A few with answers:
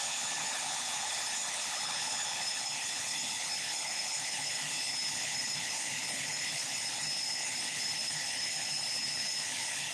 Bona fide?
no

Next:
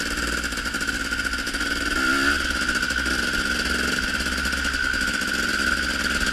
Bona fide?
yes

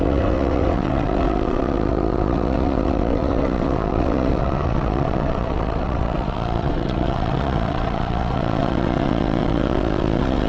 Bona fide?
no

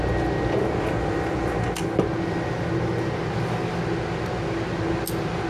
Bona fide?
yes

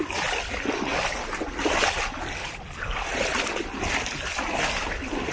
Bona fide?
yes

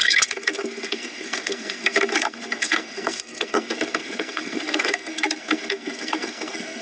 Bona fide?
no